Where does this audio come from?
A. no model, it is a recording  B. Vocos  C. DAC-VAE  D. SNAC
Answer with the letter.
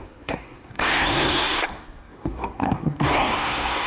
D